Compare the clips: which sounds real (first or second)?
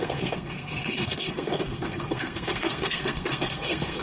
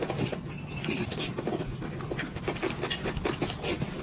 second